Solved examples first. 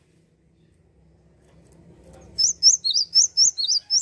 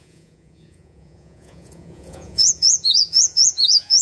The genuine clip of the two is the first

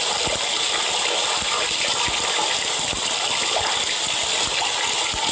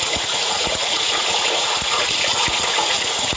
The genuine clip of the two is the first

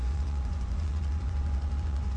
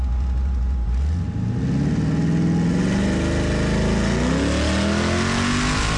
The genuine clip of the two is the second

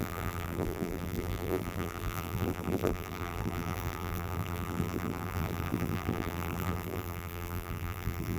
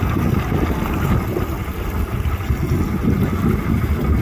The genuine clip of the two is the second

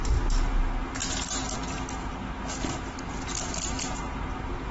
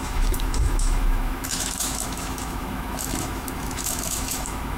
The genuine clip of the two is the first